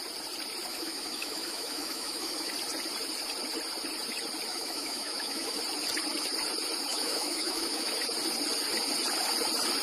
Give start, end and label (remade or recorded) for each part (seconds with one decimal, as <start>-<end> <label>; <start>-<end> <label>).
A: 0.0-0.7 recorded; 0.7-2.5 remade; 2.5-4.5 recorded; 4.5-5.6 remade; 5.6-6.9 recorded; 6.9-7.9 remade; 7.9-9.8 recorded